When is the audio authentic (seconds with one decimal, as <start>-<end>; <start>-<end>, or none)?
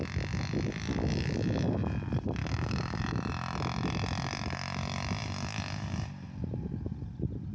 0.0-2.4; 3.0-7.5